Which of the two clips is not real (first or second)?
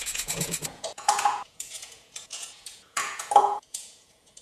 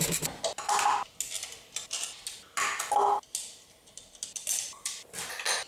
first